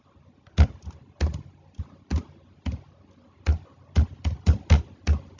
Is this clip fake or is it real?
real